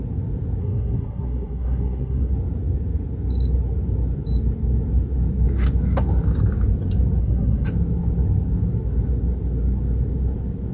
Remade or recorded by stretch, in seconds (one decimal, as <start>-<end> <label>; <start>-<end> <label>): 0.0-0.6 recorded; 0.6-2.3 remade; 2.3-7.2 recorded; 7.2-7.7 remade; 7.7-10.7 recorded